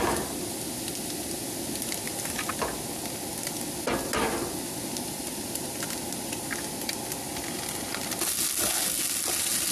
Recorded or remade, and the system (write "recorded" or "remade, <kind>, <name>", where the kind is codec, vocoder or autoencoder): recorded